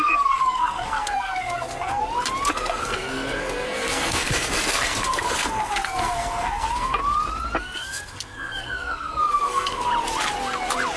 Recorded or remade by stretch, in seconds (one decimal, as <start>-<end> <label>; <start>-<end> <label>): 0.0-2.0 remade; 2.0-2.5 recorded; 2.5-7.0 remade; 7.0-7.6 recorded; 7.6-9.9 remade; 9.9-11.0 recorded